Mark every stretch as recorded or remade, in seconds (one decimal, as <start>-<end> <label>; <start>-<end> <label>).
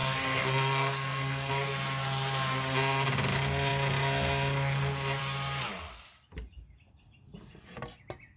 0.0-1.5 remade; 1.5-8.4 recorded